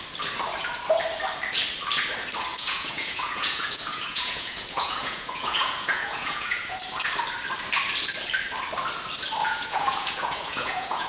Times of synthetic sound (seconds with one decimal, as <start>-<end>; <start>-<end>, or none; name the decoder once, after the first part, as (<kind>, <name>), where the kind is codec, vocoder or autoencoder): 2.5-6.8 (vocoder, Vocos); 9.4-11.1